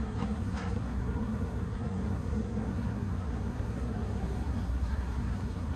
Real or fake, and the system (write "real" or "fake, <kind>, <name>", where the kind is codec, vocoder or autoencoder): fake, codec, SNAC